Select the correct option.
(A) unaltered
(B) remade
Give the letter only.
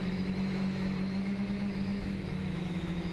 B